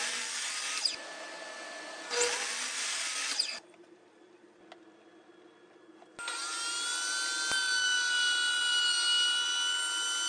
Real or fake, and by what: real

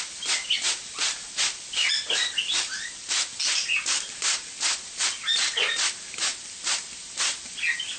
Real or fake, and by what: real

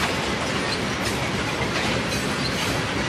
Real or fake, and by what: real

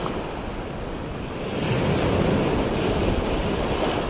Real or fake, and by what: real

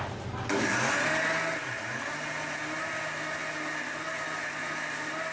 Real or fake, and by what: real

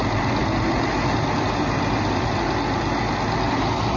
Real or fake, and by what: real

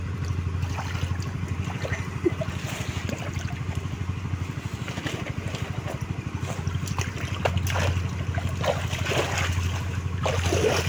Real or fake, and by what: real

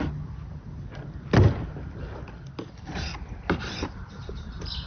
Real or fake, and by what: real